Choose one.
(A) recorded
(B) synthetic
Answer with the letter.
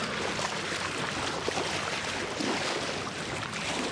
A